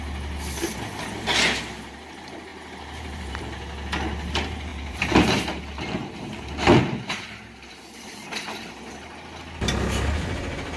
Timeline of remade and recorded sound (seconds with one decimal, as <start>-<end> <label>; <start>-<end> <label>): 0.0-2.5 recorded; 2.5-3.4 remade; 3.4-4.7 recorded; 4.7-6.1 remade; 6.1-6.8 recorded; 6.8-8.3 remade; 8.3-10.8 recorded